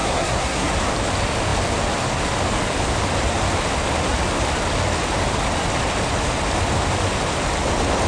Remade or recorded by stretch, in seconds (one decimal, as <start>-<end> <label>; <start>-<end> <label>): 0.0-0.7 remade; 0.7-8.1 recorded